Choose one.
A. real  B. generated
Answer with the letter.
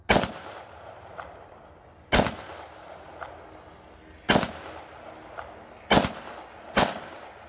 A